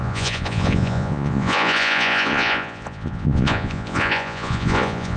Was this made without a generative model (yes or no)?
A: no